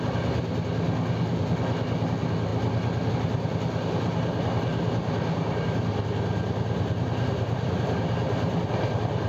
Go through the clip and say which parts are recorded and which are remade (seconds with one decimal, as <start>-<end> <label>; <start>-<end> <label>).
0.0-9.3 recorded